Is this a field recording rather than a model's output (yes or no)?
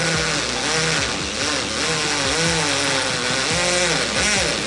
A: yes